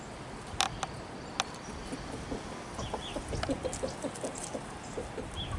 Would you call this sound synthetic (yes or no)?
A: no